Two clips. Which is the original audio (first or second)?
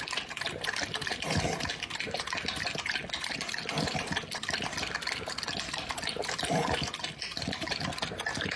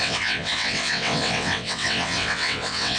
first